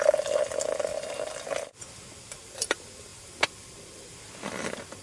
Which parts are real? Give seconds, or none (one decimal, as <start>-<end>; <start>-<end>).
0.0-0.9; 1.5-5.0